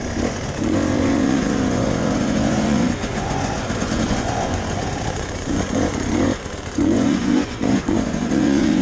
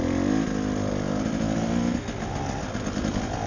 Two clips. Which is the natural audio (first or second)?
second